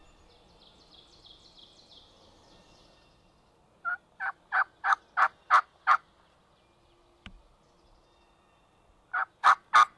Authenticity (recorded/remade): recorded